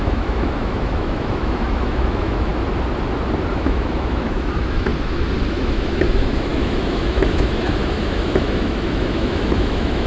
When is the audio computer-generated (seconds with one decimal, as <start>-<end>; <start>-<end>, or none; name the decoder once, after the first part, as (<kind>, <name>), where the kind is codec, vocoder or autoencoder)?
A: 0.0-2.5 (autoencoder, DAC-VAE); 3.5-4.9; 5.5-10.1